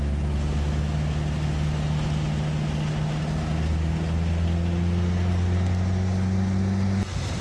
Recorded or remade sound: recorded